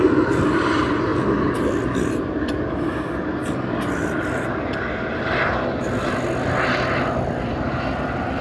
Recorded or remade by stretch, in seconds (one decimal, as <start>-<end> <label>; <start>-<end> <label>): 0.0-8.4 recorded